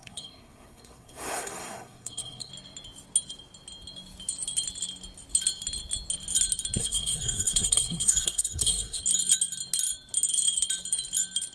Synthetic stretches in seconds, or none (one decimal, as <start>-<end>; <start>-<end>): 0.0-2.5; 6.8-9.0